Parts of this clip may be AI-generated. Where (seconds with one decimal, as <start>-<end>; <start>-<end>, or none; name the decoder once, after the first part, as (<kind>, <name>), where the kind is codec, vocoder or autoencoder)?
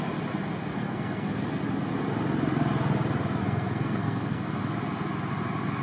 0.7-1.3 (codec, SNAC); 3.4-4.6